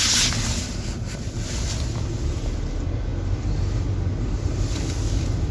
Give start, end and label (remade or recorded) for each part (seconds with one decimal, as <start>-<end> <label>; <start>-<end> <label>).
0.0-5.5 recorded